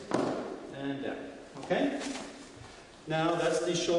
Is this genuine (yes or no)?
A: yes